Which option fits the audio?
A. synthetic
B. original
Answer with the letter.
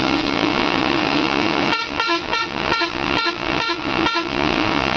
A